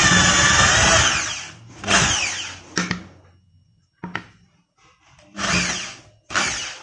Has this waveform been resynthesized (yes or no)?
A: no